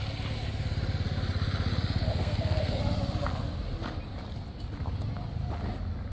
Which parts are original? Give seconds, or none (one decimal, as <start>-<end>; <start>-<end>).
0.0-2.1; 2.8-6.1